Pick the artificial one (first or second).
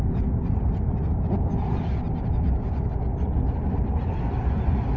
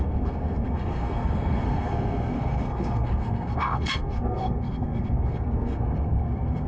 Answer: second